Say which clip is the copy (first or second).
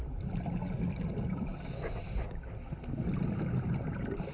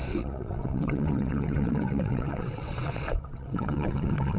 second